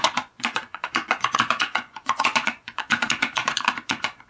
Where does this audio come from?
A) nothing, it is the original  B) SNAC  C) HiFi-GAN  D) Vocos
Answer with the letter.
D